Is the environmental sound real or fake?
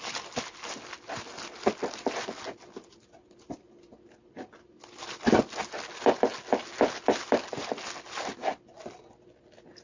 real